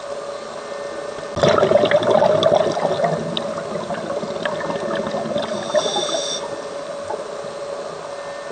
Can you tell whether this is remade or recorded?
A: recorded